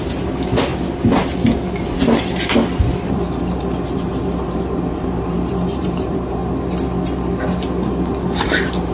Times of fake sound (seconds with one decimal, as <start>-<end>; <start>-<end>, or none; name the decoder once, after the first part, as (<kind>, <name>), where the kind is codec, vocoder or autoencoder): 0.0-0.7 (vocoder, BigVGAN v2); 3.1-6.4; 8.2-8.9